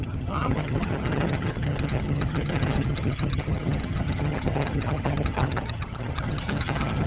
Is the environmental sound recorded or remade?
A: remade